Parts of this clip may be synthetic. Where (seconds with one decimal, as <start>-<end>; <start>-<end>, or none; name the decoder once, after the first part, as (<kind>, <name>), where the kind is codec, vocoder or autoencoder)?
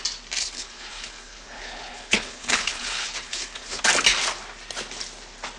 0.4-3.8 (codec, HILCodec)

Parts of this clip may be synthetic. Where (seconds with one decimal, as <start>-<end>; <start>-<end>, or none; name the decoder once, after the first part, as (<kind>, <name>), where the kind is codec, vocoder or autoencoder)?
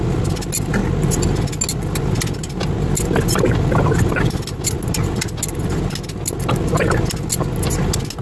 none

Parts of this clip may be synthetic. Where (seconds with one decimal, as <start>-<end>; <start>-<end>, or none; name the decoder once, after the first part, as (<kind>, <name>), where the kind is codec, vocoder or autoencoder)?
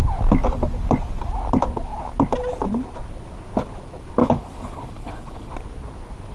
4.2-5.5 (codec, HILCodec)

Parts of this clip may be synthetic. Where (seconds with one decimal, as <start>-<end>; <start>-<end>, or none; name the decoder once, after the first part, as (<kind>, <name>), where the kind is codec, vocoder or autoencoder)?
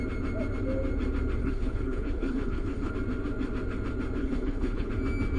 1.4-2.9 (codec, HILCodec); 4.2-4.9